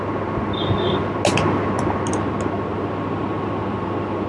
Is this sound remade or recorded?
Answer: recorded